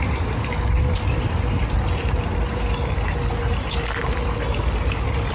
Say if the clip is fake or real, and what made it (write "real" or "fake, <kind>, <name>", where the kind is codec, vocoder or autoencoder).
real